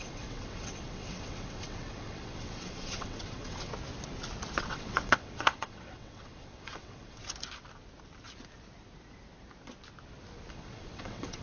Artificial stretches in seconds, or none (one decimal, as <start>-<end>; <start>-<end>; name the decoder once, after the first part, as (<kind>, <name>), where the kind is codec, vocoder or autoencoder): 0.0-3.7 (vocoder, WaveNeXt); 4.6-7.2; 10.5-11.4